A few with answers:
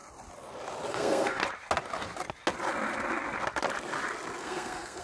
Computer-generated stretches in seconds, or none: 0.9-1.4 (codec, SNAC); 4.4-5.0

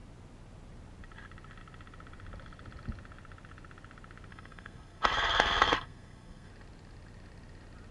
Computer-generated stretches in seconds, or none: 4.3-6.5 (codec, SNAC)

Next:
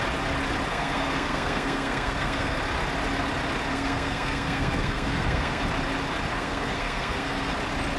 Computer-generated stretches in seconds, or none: 0.7-2.6 (codec, SNAC); 3.7-5.6; 6.3-7.5

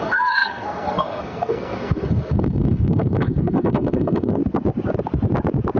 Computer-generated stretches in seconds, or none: 0.0-4.4 (codec, SNAC)

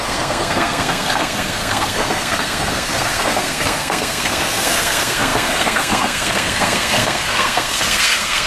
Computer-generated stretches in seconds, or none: 0.0-8.5 (codec, SNAC)

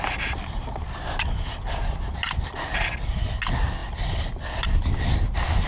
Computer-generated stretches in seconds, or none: none

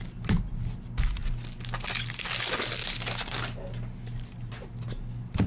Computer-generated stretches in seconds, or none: none